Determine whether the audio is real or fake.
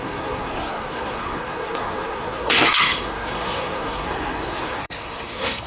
fake